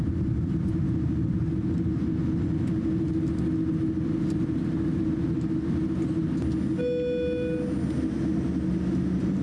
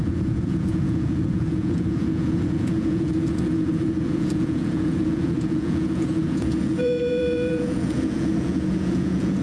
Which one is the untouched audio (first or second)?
first